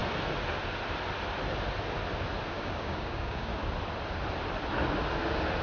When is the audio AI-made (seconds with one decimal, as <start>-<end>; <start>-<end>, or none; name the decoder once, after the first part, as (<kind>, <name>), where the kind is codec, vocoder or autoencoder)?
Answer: 2.5-3.5 (codec, DAC)